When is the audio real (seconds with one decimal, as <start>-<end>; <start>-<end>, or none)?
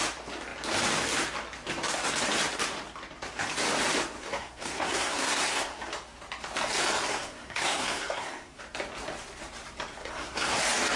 0.0-4.2; 5.8-7.1; 8.6-10.0; 10.6-11.0